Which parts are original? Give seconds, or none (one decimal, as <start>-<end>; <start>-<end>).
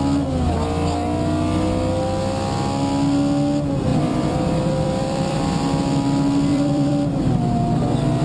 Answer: 0.0-3.9; 5.8-6.5; 7.2-8.2